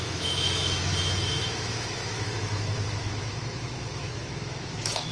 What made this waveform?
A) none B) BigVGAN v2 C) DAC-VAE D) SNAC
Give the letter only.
C